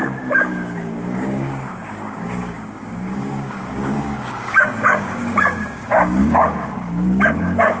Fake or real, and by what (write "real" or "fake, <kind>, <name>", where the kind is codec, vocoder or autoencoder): fake, codec, DAC